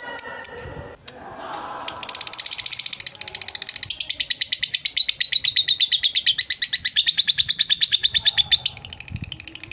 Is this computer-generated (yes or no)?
no